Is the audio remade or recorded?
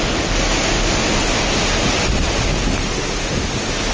recorded